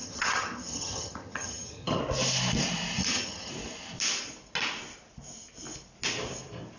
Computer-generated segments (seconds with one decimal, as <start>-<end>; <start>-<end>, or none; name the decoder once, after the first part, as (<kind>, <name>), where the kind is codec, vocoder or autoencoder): 0.0-2.0 (vocoder, HiFi-GAN); 3.0-3.5